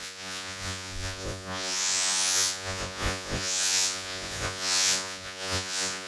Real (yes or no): no